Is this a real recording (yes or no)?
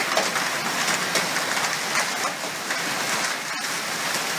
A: yes